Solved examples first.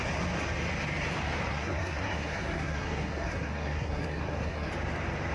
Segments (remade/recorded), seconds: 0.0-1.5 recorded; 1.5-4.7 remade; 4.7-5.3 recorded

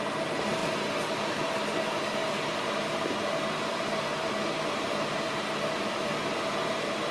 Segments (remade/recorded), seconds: 0.0-7.1 recorded

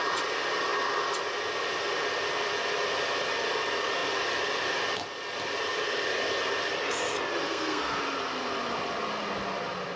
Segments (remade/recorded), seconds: 0.0-7.4 recorded; 7.4-8.0 remade; 8.0-10.0 recorded

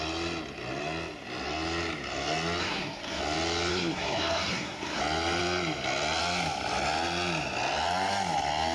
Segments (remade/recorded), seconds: 0.0-2.6 recorded; 2.6-3.2 remade; 3.2-3.7 recorded; 3.7-5.0 remade; 5.0-8.7 recorded

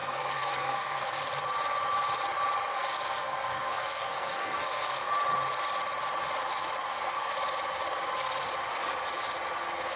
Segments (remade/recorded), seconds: 0.0-1.2 remade; 1.2-2.7 recorded; 2.7-5.1 remade; 5.1-6.8 recorded; 6.8-7.3 remade; 7.3-10.0 recorded